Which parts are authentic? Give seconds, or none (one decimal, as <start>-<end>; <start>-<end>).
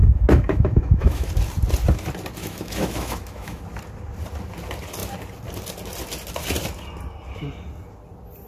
1.3-2.4; 3.6-8.5